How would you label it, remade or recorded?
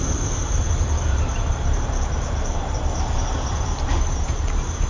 remade